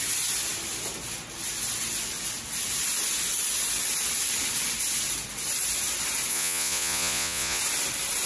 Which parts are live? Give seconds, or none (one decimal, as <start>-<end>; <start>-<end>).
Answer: 0.0-6.3; 7.6-8.3